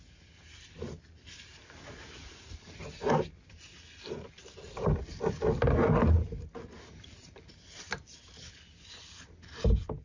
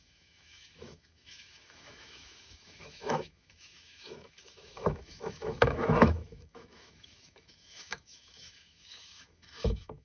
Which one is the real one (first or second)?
first